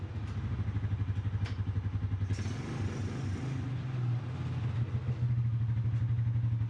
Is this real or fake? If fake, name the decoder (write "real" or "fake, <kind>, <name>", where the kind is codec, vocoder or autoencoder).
real